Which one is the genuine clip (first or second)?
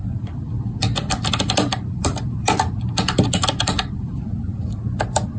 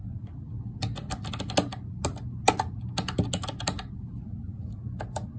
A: second